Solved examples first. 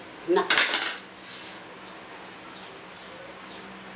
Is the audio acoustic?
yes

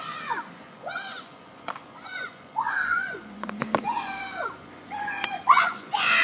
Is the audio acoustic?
no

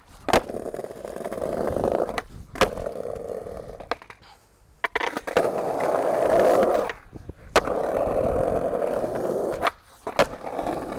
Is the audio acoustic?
yes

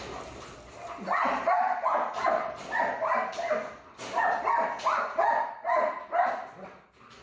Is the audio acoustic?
yes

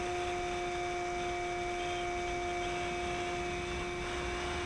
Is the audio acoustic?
yes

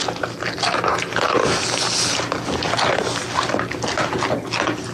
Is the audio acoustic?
yes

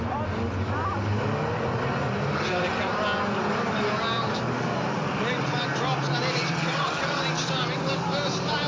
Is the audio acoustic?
yes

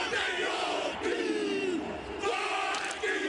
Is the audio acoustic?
no